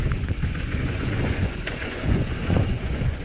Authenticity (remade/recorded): remade